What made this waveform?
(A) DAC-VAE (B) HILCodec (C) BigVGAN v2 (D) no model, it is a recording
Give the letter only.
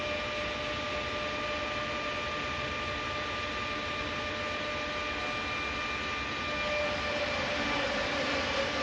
D